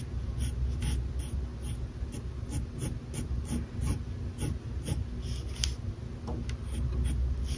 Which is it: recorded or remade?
recorded